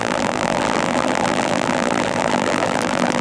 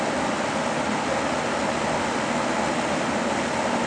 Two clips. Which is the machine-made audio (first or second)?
first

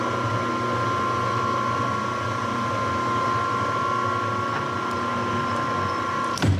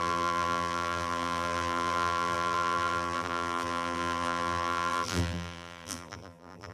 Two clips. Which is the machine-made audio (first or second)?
second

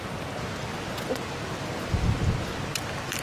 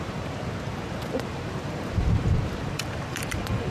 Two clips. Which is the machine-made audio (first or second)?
second